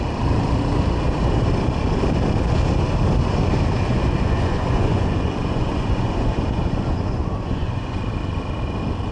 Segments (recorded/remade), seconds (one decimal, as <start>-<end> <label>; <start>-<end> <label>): 0.0-3.9 recorded; 3.9-8.0 remade; 8.0-9.1 recorded